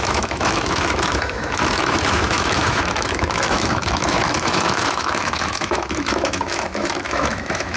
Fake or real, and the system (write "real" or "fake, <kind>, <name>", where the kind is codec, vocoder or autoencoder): fake, autoencoder, DAC-VAE